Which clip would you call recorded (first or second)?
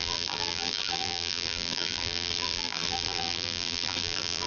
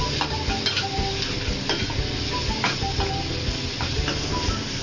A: second